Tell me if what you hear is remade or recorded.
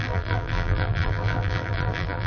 remade